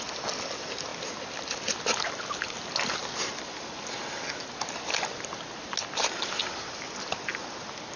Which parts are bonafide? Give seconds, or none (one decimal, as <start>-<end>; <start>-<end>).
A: 0.0-8.0